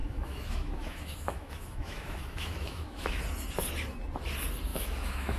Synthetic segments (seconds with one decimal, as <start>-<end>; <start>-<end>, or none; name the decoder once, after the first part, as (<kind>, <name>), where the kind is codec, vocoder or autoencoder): 0.0-3.2 (autoencoder, DAC-VAE); 4.7-5.4